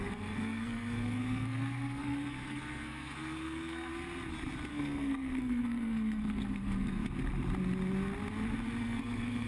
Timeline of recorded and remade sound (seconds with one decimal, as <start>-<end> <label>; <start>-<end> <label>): 0.0-3.9 remade; 3.9-4.7 recorded; 4.7-7.0 remade; 7.0-8.8 recorded; 8.8-9.5 remade

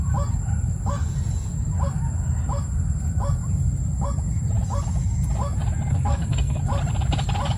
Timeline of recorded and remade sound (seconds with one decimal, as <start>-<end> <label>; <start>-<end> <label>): 0.0-5.9 recorded; 5.9-6.6 remade; 6.6-7.6 recorded

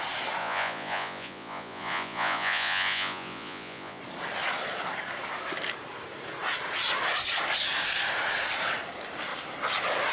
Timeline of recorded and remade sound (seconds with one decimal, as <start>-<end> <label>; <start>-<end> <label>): 0.0-0.4 recorded; 0.4-4.0 remade; 4.0-10.1 recorded

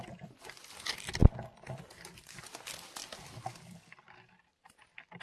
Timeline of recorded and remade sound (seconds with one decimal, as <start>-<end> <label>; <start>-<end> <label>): 0.0-5.2 recorded

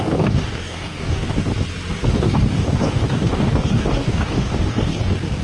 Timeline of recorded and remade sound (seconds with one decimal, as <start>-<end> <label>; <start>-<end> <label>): 0.0-1.5 remade; 1.5-2.1 recorded; 2.1-5.4 remade

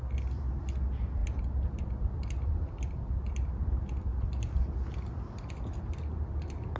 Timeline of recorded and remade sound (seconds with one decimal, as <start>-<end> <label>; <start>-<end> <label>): 0.0-6.8 recorded

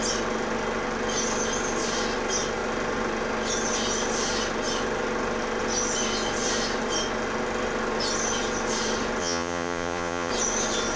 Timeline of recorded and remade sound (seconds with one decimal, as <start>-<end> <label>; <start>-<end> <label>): 0.0-9.2 recorded; 9.2-10.3 remade; 10.3-11.0 recorded